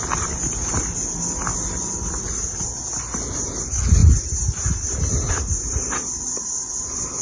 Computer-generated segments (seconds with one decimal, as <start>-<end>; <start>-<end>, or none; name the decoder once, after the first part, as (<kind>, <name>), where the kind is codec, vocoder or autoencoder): none